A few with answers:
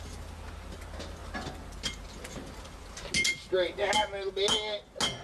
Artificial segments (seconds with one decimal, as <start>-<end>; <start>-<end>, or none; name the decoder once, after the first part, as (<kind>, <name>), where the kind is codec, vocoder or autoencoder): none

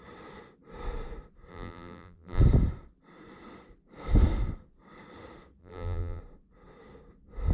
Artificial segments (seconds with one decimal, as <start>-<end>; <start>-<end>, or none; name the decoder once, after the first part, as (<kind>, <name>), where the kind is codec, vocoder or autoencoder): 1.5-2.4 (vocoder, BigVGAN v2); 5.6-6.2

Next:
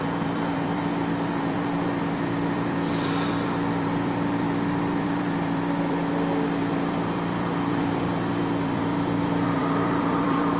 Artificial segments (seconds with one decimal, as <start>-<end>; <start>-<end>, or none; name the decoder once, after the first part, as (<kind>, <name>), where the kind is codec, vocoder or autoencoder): 0.0-6.0 (vocoder, BigVGAN v2); 6.6-10.6

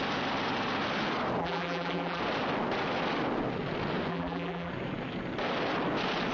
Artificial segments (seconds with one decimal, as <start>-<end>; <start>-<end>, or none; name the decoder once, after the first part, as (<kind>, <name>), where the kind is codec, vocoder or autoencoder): 1.4-2.2 (vocoder, BigVGAN v2); 4.1-4.7

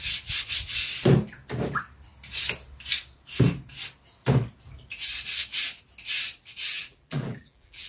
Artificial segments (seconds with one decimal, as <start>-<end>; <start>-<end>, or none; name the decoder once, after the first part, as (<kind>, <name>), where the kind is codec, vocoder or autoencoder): 6.7-7.9 (vocoder, BigVGAN v2)

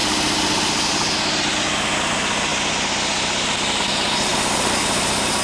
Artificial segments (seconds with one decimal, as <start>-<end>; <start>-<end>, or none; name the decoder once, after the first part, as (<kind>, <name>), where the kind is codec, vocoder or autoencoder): 4.3-4.8 (vocoder, BigVGAN v2)

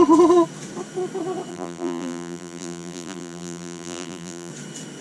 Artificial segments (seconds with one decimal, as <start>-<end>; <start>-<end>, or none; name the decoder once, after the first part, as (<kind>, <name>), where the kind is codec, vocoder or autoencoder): 1.5-4.5 (vocoder, BigVGAN v2)

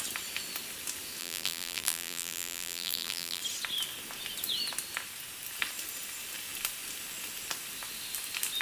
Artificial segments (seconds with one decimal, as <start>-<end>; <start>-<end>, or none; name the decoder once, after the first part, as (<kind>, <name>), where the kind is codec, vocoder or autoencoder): 1.2-3.4 (vocoder, BigVGAN v2)